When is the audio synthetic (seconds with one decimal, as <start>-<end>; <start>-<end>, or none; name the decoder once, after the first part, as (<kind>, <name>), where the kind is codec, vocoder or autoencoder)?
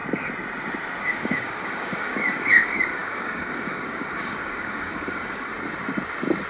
1.0-5.5 (codec, DAC)